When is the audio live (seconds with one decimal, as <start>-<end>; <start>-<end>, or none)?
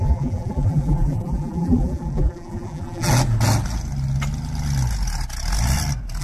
3.1-6.2